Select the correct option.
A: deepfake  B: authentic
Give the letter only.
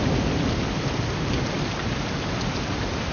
B